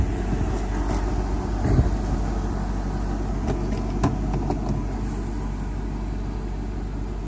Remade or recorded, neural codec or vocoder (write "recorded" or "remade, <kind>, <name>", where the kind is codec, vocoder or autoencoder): recorded